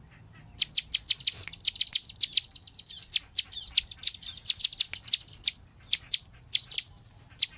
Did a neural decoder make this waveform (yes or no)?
no